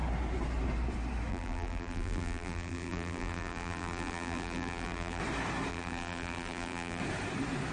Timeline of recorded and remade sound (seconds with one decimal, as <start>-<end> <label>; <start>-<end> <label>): 0.0-1.3 recorded; 1.3-5.2 remade; 5.2-5.7 recorded; 5.7-7.0 remade; 7.0-7.7 recorded